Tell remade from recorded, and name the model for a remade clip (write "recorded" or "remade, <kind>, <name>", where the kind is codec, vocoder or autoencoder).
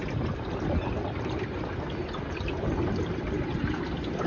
recorded